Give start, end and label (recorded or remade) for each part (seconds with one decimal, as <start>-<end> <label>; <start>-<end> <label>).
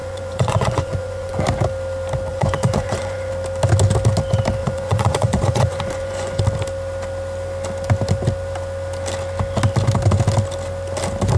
0.0-1.4 remade; 1.4-2.3 recorded; 2.3-3.3 remade; 3.3-4.6 recorded; 4.6-6.4 remade; 6.4-11.4 recorded